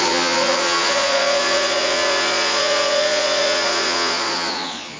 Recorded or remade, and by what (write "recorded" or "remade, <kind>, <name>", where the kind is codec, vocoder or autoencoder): remade, vocoder, Vocos